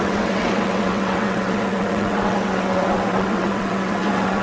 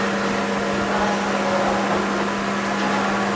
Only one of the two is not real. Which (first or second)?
first